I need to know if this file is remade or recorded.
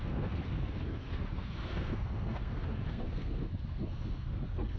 remade